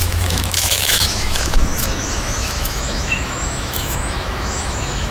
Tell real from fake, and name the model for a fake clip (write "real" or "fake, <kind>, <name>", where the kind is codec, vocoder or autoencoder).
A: fake, autoencoder, DAC-VAE